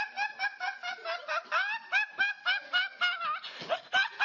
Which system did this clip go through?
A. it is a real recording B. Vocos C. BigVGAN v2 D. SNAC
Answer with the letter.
A